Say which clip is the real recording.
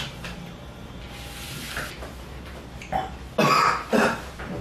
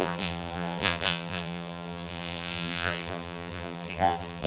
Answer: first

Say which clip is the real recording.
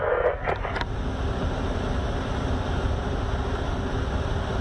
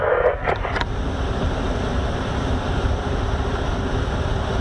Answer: first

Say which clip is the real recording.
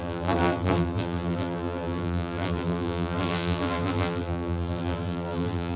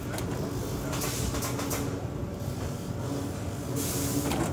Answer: second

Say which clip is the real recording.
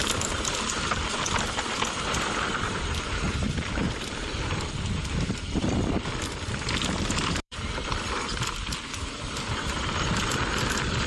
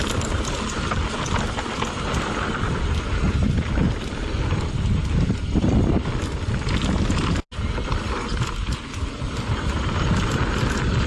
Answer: second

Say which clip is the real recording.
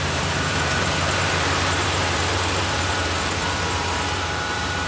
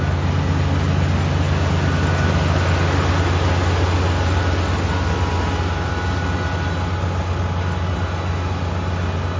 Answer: second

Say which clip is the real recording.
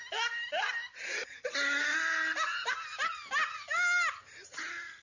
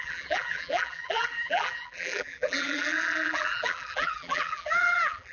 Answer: first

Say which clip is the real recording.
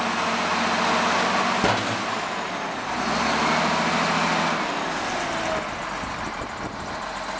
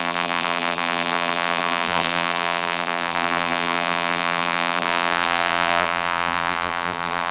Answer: first